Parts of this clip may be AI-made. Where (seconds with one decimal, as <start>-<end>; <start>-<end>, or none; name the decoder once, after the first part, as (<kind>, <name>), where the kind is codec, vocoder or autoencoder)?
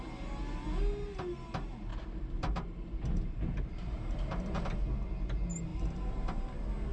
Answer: 1.9-4.6 (vocoder, BigVGAN v2); 5.7-6.5